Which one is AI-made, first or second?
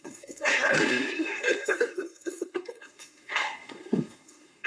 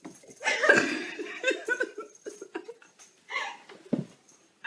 first